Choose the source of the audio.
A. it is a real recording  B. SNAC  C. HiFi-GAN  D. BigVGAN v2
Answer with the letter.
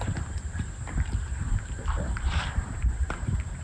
D